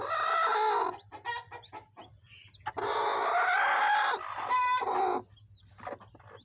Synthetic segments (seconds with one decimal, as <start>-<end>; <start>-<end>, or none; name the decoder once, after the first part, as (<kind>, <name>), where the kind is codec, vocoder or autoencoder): none